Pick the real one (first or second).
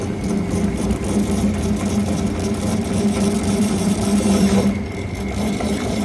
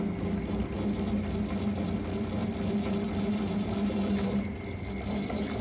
second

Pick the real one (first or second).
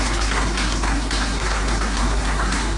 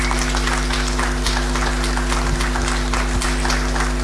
second